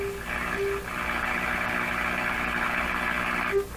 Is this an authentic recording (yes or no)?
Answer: yes